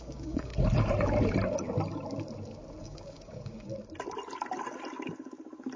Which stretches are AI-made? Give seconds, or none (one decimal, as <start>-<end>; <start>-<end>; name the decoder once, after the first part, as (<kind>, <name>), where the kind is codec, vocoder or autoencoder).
0.0-0.5 (codec, DAC); 2.8-3.7